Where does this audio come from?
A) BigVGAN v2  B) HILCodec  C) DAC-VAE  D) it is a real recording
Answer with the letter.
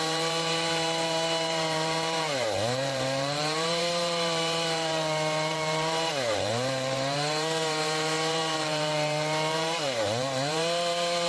A